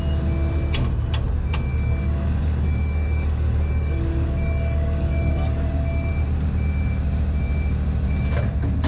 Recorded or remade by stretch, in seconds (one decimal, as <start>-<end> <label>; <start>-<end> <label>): 0.0-1.7 recorded; 1.7-6.1 remade; 6.1-8.9 recorded